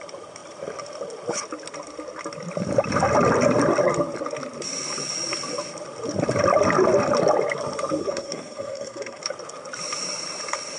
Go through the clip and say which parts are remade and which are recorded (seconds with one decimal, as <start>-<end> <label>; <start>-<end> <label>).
0.0-8.0 recorded; 8.0-9.2 remade; 9.2-10.8 recorded